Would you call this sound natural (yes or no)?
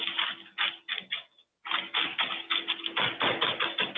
yes